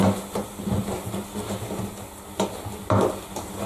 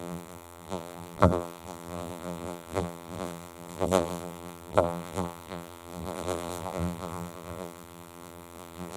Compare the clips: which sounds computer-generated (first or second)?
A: second